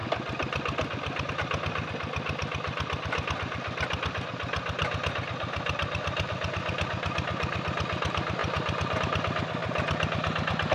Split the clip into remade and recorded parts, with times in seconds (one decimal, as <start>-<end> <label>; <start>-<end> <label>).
0.0-10.7 recorded